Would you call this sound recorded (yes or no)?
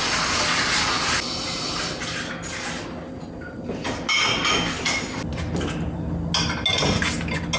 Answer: yes